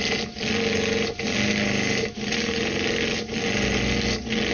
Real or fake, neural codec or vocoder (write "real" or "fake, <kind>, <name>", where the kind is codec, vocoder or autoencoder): real